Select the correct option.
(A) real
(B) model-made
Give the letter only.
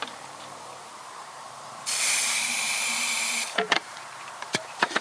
B